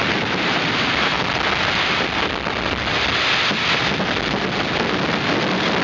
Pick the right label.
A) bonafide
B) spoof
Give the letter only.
A